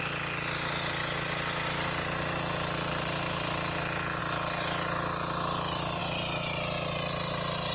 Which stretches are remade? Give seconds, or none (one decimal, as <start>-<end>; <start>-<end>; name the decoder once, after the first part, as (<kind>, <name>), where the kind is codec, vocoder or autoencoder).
none